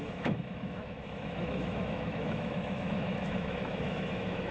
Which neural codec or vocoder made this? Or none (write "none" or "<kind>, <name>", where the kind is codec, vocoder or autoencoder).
autoencoder, DAC-VAE